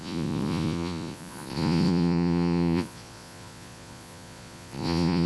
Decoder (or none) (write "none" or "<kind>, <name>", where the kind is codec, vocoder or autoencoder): vocoder, Vocos